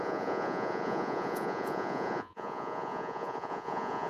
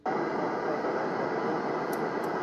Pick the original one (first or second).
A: second